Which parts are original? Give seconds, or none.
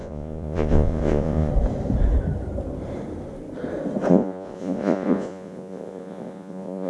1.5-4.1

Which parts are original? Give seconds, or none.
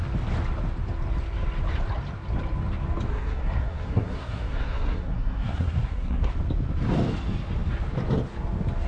0.0-3.1; 6.3-8.9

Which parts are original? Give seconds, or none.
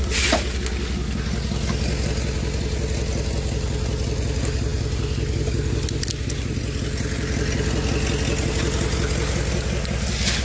0.0-10.4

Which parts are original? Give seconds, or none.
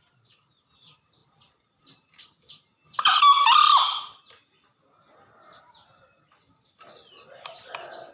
0.0-8.1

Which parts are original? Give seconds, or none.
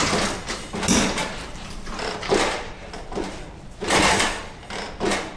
0.0-1.2; 4.4-5.4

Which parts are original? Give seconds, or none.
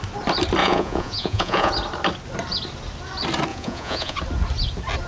0.0-0.6; 1.7-3.5; 4.2-5.1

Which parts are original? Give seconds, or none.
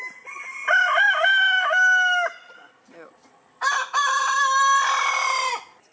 0.0-5.9